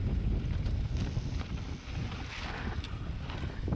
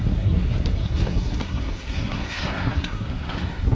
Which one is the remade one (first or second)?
second